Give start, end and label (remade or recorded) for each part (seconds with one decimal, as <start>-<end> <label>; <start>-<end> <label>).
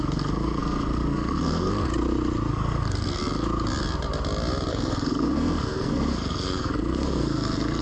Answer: 0.0-1.9 remade; 1.9-2.5 recorded; 2.5-3.2 remade; 3.2-4.7 recorded; 4.7-7.8 remade